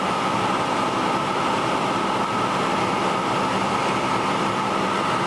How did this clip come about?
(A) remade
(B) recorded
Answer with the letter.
B